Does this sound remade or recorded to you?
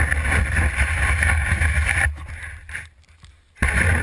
recorded